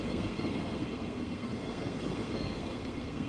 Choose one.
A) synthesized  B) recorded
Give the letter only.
A